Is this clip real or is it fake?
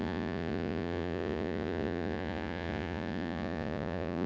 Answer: fake